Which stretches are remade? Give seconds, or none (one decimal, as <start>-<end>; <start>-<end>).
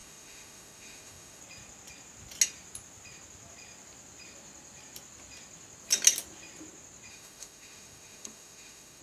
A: 0.0-1.4; 7.1-9.0